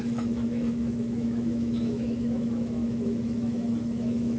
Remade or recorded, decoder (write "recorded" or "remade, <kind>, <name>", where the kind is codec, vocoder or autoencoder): remade, autoencoder, DAC-VAE